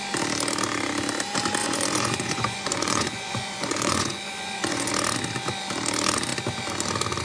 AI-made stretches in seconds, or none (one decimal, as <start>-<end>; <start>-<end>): 1.6-4.9